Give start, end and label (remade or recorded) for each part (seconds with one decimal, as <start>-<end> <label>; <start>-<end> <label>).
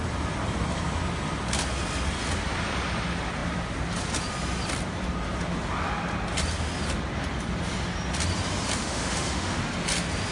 0.0-8.8 recorded; 8.8-9.6 remade; 9.6-10.3 recorded